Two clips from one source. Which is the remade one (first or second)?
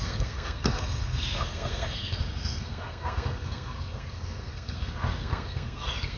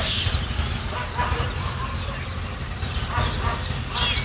first